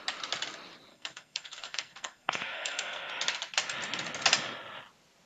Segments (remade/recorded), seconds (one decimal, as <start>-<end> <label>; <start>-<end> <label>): 0.0-0.9 recorded; 0.9-3.1 remade; 3.1-5.3 recorded